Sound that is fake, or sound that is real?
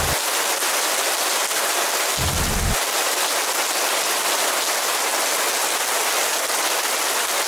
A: real